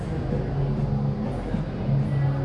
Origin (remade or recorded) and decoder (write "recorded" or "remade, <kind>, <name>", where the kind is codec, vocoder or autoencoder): recorded